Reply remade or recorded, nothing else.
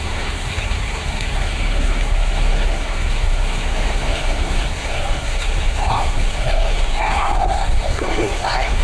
remade